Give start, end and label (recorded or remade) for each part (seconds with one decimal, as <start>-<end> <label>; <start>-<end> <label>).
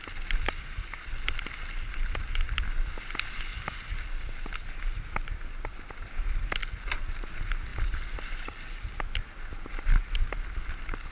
0.0-11.1 recorded